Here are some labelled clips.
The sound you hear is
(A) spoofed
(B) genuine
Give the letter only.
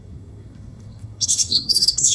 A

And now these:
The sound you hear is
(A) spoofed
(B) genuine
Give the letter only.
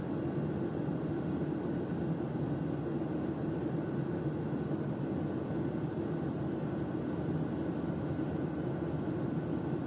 B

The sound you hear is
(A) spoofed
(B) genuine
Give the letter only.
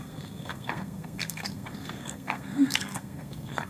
A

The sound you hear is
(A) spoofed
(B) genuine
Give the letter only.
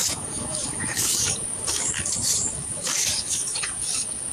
A